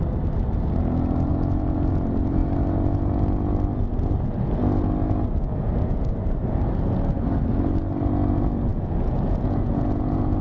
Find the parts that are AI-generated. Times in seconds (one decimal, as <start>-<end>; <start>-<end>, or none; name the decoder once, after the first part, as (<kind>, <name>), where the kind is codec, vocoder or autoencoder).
1.3-1.9 (vocoder, Vocos); 8.7-10.4